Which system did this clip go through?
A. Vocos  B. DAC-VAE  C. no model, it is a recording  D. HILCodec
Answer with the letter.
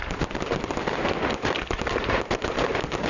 C